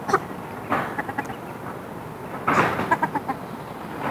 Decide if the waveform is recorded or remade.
recorded